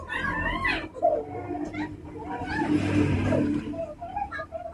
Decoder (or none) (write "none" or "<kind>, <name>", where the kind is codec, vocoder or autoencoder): none